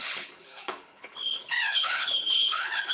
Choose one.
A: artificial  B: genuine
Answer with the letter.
A